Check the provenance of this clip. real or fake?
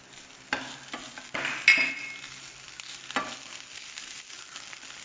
real